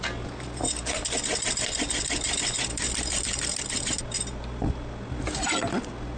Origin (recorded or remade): recorded